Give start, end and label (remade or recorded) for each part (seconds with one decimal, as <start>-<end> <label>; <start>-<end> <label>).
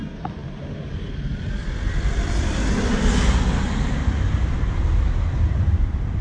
0.0-6.2 recorded